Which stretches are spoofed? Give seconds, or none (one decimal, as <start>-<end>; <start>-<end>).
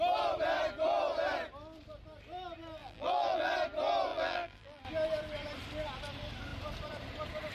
2.8-3.5; 4.1-4.8